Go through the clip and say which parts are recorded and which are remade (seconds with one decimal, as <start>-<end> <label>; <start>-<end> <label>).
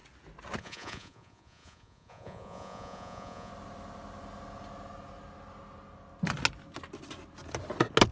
0.0-0.6 recorded; 0.6-3.5 remade; 3.5-8.1 recorded